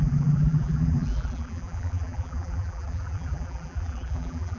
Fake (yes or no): yes